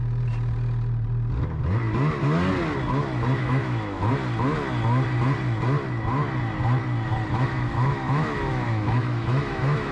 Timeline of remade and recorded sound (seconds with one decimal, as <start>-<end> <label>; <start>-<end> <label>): 0.0-3.4 recorded; 3.4-4.0 remade; 4.0-7.3 recorded; 7.3-9.9 remade